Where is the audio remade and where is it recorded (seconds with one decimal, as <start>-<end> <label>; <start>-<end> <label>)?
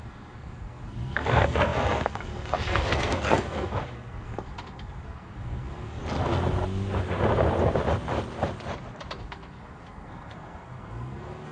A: 0.0-6.0 remade; 6.0-9.2 recorded; 9.2-11.5 remade